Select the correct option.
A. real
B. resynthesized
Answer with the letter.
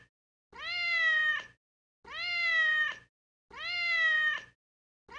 A